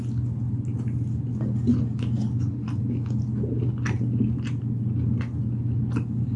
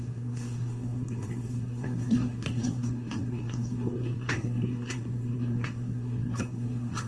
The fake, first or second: second